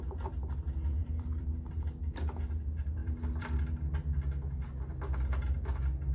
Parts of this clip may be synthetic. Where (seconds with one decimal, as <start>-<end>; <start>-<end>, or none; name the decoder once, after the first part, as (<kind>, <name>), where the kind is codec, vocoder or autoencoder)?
1.0-1.7 (vocoder, BigVGAN v2); 3.0-3.6